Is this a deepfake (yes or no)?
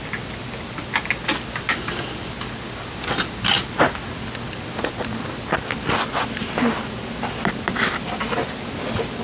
no